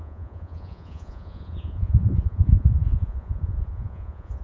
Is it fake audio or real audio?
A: fake